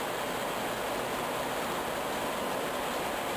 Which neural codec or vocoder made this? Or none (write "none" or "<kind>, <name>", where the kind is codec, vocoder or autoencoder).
none